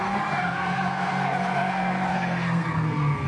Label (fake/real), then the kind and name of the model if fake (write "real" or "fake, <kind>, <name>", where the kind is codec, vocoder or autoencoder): fake, codec, SNAC